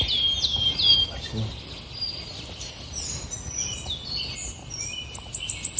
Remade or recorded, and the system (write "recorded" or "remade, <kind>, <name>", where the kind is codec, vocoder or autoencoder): recorded